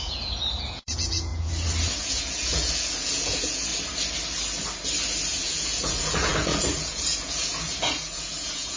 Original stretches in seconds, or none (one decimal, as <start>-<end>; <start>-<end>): 1.3-2.0; 3.7-5.4